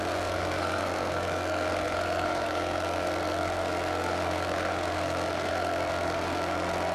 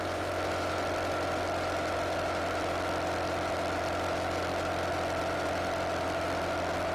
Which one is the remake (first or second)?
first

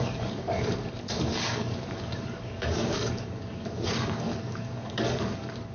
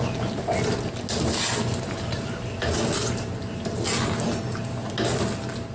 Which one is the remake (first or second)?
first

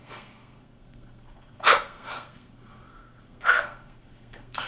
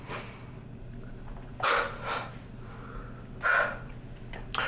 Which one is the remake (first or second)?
first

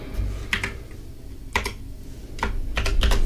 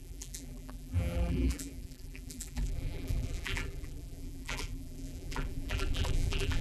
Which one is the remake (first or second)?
second